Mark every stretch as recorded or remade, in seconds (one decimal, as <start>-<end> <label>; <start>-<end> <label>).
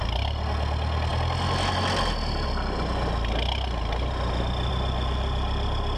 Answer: 0.0-6.0 recorded